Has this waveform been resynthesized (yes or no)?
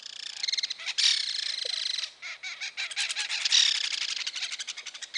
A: no